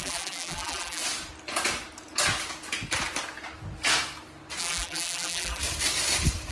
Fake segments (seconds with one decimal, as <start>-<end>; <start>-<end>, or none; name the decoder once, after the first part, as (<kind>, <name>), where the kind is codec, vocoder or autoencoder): 0.0-1.0 (vocoder, BigVGAN v2); 4.6-5.6